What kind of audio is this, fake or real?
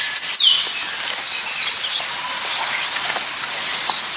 real